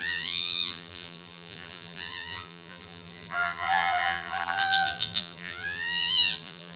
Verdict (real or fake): fake